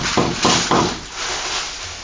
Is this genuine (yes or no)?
yes